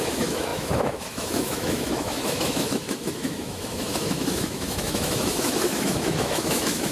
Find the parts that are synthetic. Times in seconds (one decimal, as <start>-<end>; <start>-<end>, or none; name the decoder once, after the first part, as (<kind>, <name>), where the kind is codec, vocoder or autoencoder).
0.0-6.9 (autoencoder, DAC-VAE)